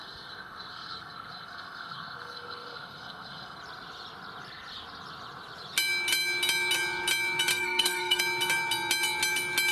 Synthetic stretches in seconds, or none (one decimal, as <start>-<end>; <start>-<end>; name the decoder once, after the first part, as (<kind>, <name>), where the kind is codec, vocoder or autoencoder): 0.0-3.6 (codec, SNAC); 7.5-8.2